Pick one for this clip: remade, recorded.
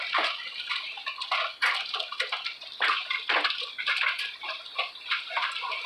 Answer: recorded